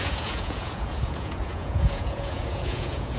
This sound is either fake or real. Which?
fake